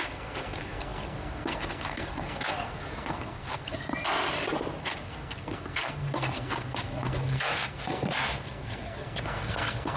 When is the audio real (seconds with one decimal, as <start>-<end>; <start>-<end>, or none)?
3.9-4.8